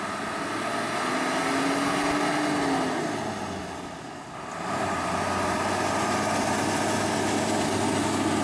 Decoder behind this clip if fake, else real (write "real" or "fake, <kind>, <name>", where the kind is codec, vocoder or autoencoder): real